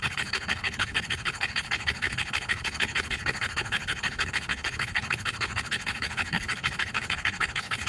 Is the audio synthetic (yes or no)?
yes